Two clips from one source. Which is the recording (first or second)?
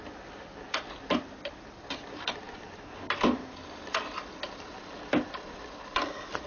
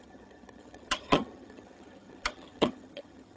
first